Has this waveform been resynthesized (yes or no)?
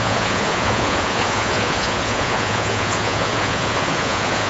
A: yes